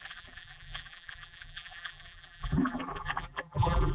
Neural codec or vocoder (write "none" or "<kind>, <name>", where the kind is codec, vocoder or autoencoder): vocoder, BigVGAN v2